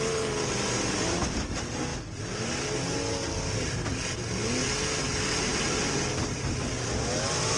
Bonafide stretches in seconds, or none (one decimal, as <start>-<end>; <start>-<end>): 0.0-7.6